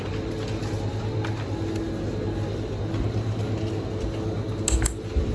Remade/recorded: recorded